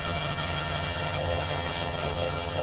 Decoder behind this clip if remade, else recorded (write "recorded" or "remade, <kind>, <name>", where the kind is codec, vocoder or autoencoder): remade, vocoder, HiFi-GAN